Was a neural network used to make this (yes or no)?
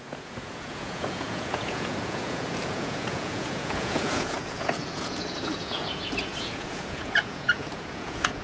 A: yes